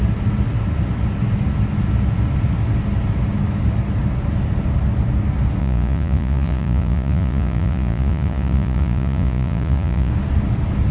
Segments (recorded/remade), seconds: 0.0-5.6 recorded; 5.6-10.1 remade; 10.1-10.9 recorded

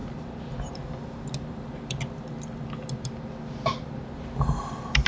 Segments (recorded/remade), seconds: 0.0-5.1 recorded

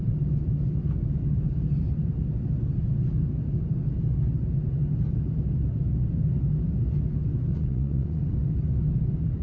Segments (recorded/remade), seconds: 0.0-7.5 recorded; 7.5-8.2 remade; 8.2-9.4 recorded

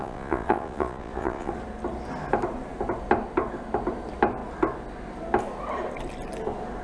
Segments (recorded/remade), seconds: 0.0-1.5 remade; 1.5-6.8 recorded

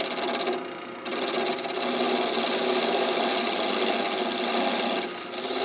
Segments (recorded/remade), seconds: 0.0-5.6 recorded